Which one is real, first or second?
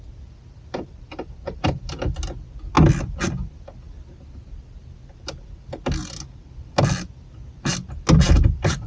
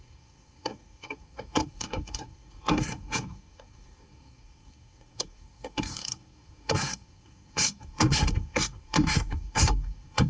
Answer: first